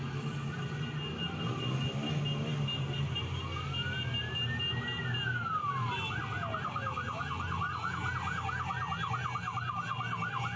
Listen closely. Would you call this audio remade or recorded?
recorded